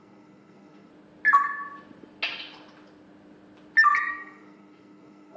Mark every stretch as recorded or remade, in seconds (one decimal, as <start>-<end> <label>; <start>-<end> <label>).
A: 0.0-0.9 remade; 0.9-4.1 recorded; 4.1-5.4 remade

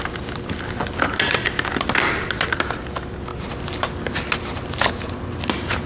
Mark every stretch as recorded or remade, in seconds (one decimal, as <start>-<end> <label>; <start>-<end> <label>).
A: 0.0-5.9 recorded

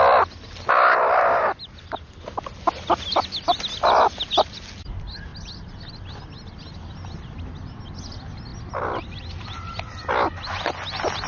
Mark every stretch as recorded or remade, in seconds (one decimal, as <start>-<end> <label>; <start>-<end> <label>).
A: 0.0-11.3 recorded

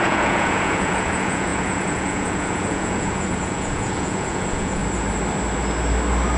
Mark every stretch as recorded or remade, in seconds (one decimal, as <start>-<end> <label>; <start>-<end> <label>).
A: 0.0-4.8 remade; 4.8-6.4 recorded

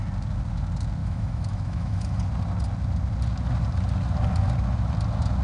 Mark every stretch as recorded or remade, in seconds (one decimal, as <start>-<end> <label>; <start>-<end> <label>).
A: 0.0-1.0 recorded; 1.0-2.2 remade; 2.2-5.4 recorded